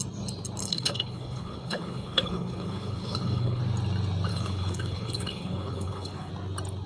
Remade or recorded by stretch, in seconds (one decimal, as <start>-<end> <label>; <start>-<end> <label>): 0.0-0.6 recorded; 0.6-3.6 remade; 3.6-4.3 recorded; 4.3-6.3 remade; 6.3-6.9 recorded